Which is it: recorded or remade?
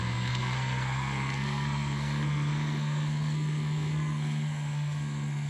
remade